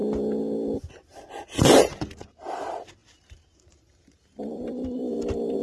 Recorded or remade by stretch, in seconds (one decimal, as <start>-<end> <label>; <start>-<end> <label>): 0.0-0.9 recorded; 0.9-5.6 remade